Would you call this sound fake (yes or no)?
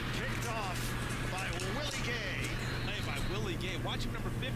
no